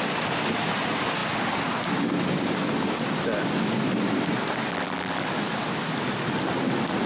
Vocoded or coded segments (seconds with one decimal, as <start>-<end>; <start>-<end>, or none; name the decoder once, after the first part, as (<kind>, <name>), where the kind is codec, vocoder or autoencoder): 4.7-5.2 (vocoder, BigVGAN v2)